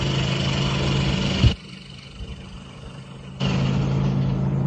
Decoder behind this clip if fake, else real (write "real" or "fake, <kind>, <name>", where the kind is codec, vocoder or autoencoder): real